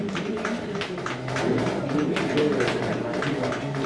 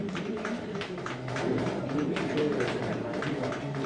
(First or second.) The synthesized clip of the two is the second